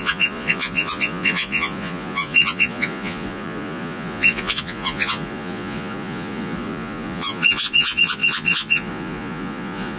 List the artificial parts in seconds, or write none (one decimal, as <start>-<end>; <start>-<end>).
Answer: 0.0-10.0